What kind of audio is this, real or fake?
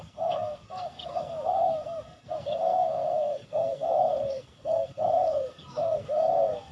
fake